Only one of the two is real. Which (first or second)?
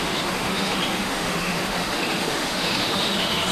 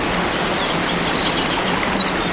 second